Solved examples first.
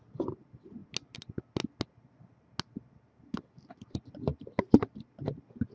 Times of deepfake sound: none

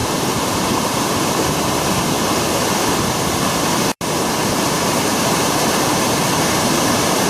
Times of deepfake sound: 0.0-0.8 (vocoder, BigVGAN v2); 5.1-7.3

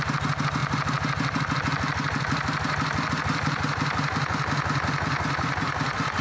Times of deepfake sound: none

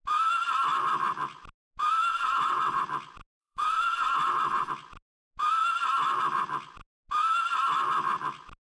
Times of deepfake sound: 2.1-2.8 (vocoder, WaveNeXt); 3.4-4.7

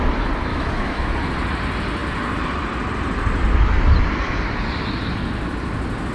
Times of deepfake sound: 0.5-1.1 (autoencoder, DAC-VAE)

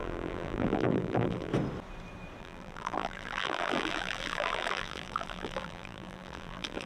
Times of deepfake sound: 0.0-1.5 (vocoder, BigVGAN v2); 2.4-6.9

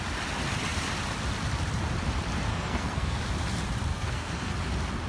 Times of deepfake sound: 2.5-3.2 (codec, SNAC); 3.9-4.5